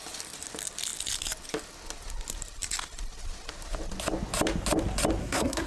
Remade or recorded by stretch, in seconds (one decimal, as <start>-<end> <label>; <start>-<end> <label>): 0.0-5.2 recorded; 5.2-5.7 remade